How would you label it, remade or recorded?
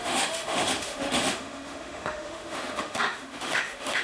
remade